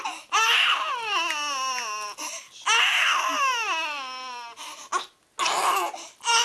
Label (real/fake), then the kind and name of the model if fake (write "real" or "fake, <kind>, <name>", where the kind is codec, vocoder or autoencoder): real